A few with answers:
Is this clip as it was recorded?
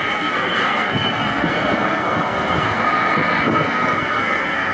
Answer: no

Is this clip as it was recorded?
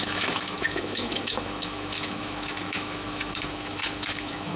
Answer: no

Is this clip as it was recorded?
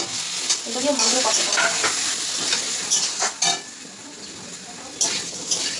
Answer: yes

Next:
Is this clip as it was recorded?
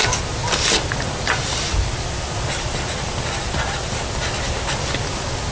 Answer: yes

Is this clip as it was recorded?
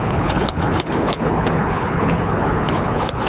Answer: no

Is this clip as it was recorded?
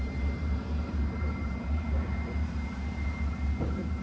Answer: no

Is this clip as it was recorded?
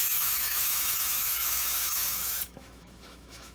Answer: no